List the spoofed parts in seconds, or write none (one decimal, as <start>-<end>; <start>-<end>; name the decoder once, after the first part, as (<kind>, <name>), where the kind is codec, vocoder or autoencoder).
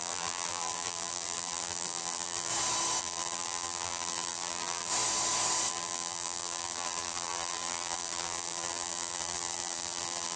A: 0.0-2.5 (vocoder, BigVGAN v2); 3.0-4.9; 5.7-10.4